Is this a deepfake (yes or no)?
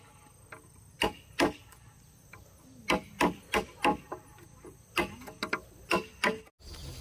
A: no